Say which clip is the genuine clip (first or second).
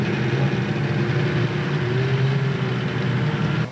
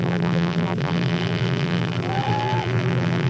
first